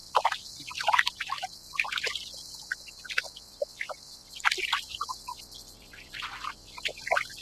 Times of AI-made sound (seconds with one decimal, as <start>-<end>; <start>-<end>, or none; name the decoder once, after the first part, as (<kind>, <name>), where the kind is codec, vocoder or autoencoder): 0.0-1.1 (vocoder, BigVGAN v2)